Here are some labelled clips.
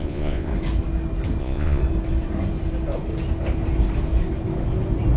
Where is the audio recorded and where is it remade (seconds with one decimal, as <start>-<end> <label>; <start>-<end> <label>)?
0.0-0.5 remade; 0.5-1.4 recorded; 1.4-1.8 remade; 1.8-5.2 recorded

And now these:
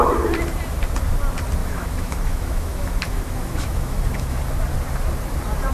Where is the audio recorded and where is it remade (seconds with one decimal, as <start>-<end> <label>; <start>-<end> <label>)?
0.0-1.6 recorded; 1.6-4.4 remade; 4.4-5.7 recorded

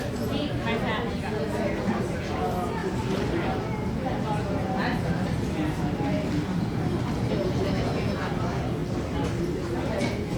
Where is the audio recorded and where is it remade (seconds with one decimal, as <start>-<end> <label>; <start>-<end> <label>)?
0.0-10.4 recorded

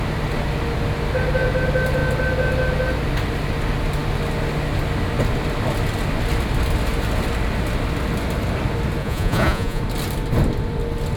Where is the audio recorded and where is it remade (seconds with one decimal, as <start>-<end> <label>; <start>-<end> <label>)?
0.0-9.0 recorded; 9.0-9.8 remade; 9.8-11.2 recorded

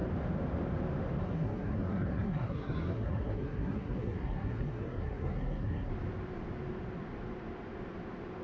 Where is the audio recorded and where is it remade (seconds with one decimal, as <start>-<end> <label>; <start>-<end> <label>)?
0.0-1.2 recorded; 1.2-5.9 remade; 5.9-8.4 recorded

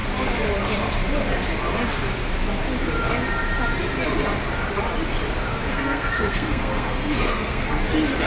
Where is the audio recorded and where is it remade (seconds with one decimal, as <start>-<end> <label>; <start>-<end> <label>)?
0.0-5.7 recorded; 5.7-7.8 remade; 7.8-8.3 recorded